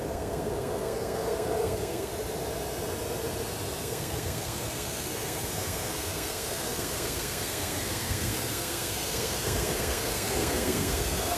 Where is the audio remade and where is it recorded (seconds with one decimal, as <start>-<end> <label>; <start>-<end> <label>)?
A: 0.0-2.1 remade; 2.1-3.8 recorded; 3.8-11.4 remade

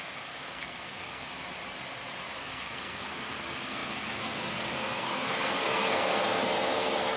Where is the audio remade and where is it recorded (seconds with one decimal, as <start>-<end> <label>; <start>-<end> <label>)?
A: 0.0-1.3 remade; 1.3-2.4 recorded; 2.4-7.2 remade